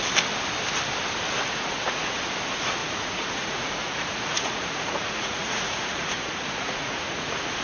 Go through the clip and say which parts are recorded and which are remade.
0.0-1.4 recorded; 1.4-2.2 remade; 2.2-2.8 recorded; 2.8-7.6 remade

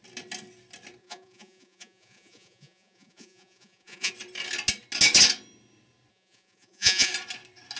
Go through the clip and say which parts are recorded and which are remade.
0.0-1.0 recorded; 1.0-4.1 remade; 4.1-6.1 recorded; 6.1-7.1 remade; 7.1-7.8 recorded

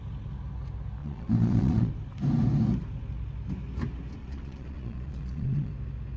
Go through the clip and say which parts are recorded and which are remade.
0.0-1.0 recorded; 1.0-1.9 remade; 1.9-4.2 recorded; 4.2-5.7 remade; 5.7-6.2 recorded

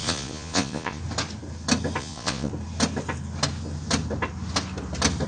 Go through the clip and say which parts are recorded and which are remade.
0.0-1.0 remade; 1.0-2.0 recorded; 2.0-2.5 remade; 2.5-5.3 recorded

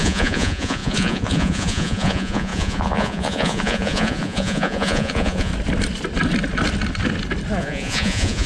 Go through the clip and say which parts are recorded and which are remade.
0.0-5.5 remade; 5.5-7.6 recorded; 7.6-8.5 remade

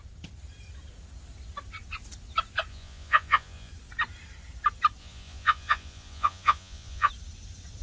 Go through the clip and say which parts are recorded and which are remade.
0.0-2.7 recorded; 2.7-3.7 remade; 3.7-5.0 recorded; 5.0-7.1 remade; 7.1-7.8 recorded

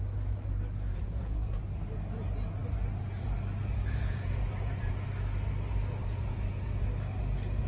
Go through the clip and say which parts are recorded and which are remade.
0.0-0.9 recorded; 0.9-1.6 remade; 1.6-3.6 recorded; 3.6-4.9 remade; 4.9-6.0 recorded; 6.0-6.8 remade; 6.8-7.7 recorded